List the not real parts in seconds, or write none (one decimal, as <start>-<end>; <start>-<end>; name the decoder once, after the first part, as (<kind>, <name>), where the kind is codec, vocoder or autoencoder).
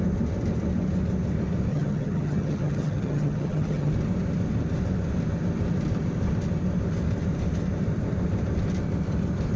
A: 1.7-3.9 (vocoder, HiFi-GAN)